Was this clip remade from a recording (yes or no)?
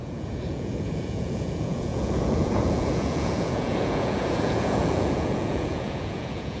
yes